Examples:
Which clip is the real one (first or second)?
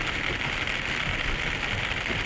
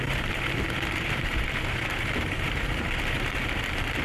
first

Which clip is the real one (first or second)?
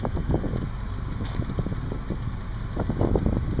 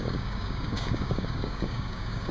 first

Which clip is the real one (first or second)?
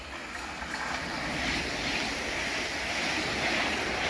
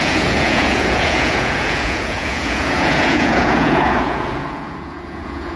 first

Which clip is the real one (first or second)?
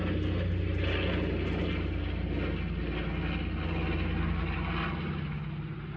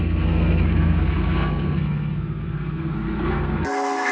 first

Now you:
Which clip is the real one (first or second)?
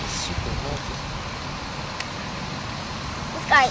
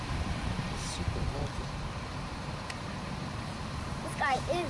first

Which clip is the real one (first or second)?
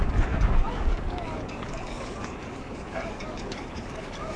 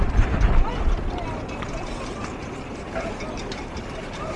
second